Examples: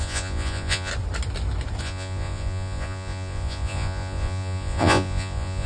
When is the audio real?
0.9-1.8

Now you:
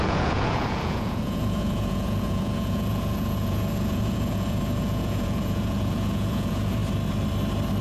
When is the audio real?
6.8-7.8

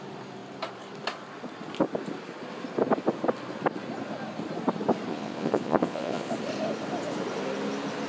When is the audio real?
0.0-5.1; 6.3-8.1